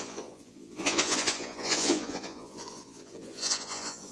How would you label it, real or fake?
fake